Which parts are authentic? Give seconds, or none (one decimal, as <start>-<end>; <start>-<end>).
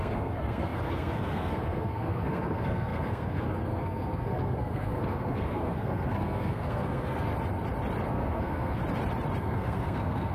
7.3-8.0; 8.8-9.4